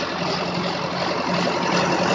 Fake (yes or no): no